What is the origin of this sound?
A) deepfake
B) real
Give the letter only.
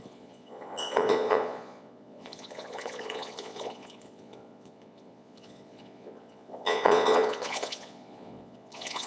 A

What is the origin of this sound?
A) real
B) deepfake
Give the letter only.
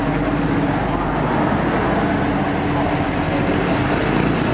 A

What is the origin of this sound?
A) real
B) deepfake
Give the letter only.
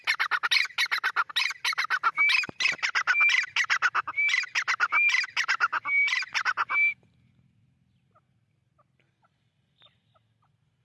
A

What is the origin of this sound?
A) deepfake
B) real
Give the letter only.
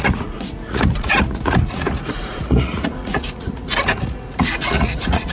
A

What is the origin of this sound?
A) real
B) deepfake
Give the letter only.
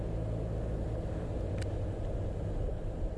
A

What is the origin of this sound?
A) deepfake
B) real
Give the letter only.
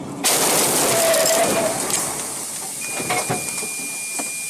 B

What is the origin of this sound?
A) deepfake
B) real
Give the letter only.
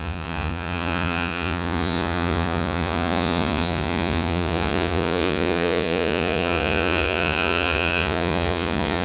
A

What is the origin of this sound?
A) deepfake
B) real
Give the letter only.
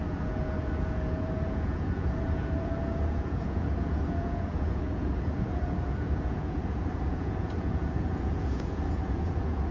A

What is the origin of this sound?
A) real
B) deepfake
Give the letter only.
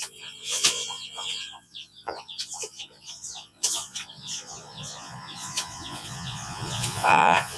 B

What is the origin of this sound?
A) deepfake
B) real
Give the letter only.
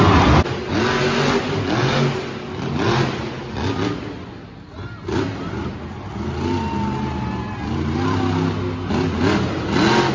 B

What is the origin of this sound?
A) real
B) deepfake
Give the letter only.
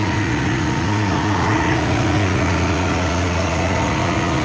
B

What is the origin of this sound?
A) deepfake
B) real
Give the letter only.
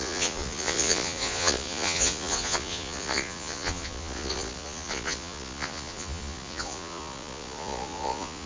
A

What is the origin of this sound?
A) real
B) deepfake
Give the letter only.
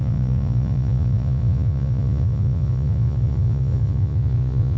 B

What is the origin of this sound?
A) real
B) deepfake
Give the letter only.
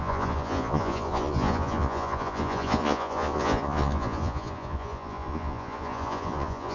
B